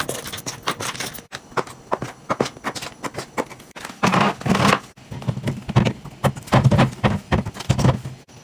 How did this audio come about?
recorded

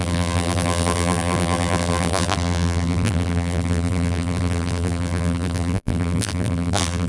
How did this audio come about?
remade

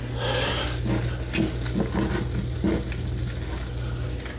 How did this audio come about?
recorded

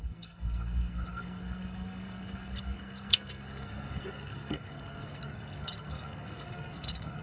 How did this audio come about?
remade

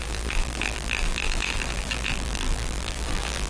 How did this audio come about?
remade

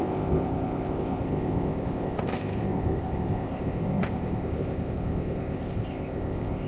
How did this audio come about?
remade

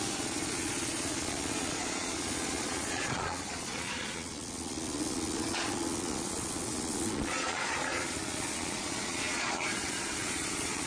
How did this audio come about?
remade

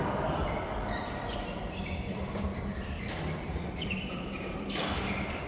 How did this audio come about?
remade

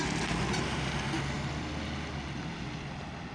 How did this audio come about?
recorded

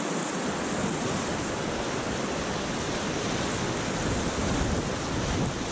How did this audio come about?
recorded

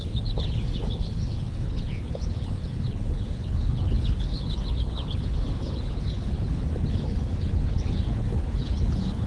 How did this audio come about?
remade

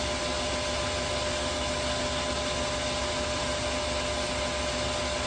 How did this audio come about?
recorded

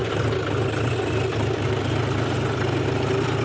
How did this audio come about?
recorded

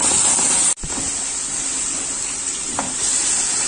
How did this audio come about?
recorded